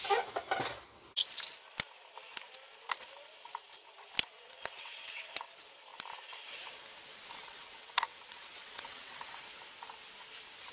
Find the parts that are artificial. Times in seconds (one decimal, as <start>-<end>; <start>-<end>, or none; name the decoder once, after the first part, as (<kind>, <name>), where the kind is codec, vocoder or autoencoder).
4.3-5.3 (vocoder, WaveNeXt); 7.4-9.2